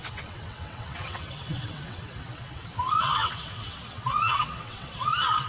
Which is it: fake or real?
fake